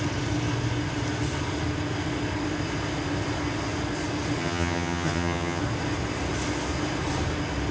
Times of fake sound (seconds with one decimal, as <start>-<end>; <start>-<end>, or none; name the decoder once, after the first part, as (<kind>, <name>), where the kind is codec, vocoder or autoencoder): 4.4-5.6 (vocoder, HiFi-GAN)